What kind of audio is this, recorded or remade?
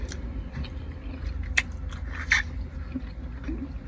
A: recorded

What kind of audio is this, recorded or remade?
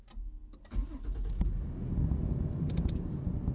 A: recorded